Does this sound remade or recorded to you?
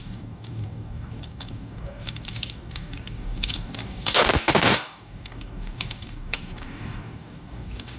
remade